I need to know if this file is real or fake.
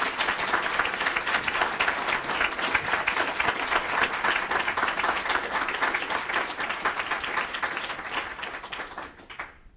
real